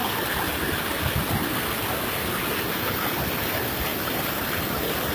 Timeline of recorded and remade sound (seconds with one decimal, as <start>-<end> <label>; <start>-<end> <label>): 0.0-3.1 recorded; 3.1-5.1 remade